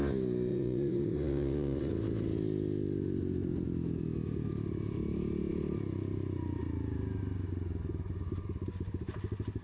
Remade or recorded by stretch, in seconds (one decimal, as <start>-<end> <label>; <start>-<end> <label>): 0.0-0.5 recorded; 0.5-1.9 remade; 1.9-9.6 recorded